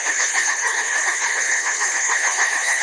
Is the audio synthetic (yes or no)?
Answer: yes